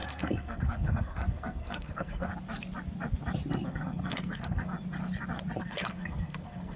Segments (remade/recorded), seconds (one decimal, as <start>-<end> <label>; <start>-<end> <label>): 0.0-2.3 remade; 2.3-3.7 recorded; 3.7-4.7 remade; 4.7-5.6 recorded; 5.6-6.8 remade